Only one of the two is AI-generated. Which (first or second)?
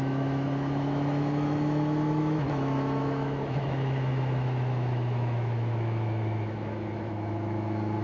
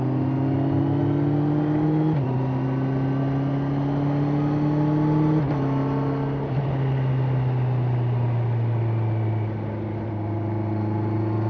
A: first